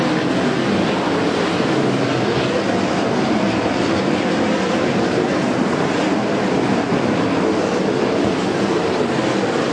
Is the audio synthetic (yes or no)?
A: no